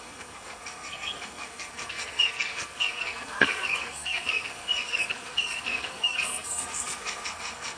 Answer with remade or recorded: remade